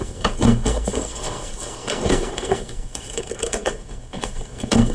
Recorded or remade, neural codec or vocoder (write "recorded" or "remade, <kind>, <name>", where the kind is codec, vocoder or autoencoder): remade, codec, SNAC